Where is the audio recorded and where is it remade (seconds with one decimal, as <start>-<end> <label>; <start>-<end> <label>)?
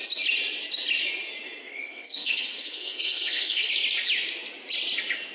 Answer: 0.0-1.6 recorded; 1.6-3.7 remade; 3.7-5.3 recorded